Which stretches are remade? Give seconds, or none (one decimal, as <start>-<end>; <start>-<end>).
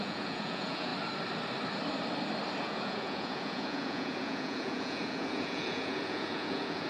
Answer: 0.0-0.9; 2.6-6.9